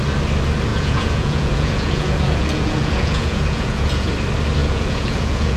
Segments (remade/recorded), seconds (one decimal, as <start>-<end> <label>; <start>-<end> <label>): 0.0-0.7 recorded; 0.7-4.1 remade; 4.1-4.6 recorded; 4.6-5.6 remade